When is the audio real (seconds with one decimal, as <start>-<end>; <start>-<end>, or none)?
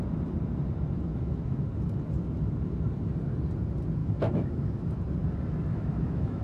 0.0-1.1; 1.7-4.0; 4.8-5.7